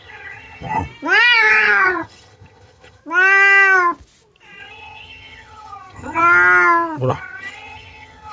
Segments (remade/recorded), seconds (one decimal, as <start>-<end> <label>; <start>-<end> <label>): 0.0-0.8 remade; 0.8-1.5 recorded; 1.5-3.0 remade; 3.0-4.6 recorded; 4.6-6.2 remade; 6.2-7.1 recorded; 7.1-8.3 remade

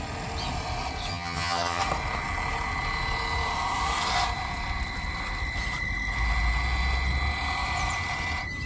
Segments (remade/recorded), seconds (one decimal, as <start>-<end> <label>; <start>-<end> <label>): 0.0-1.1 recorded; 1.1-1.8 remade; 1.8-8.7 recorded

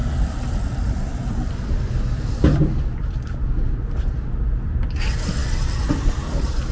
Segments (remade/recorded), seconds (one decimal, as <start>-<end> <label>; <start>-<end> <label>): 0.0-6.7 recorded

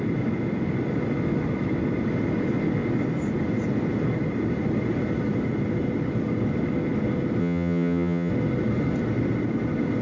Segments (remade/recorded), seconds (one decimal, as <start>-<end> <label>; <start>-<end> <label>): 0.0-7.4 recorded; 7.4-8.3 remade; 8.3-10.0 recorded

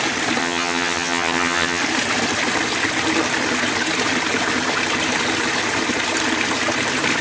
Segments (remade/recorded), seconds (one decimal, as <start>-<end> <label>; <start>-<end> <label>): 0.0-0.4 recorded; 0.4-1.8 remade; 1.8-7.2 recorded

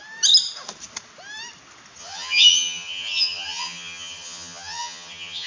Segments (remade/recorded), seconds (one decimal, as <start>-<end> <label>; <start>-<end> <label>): 0.0-2.0 recorded; 2.0-5.5 remade